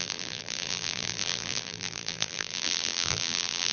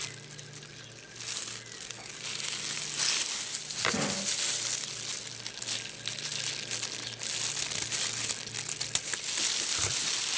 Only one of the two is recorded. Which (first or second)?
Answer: second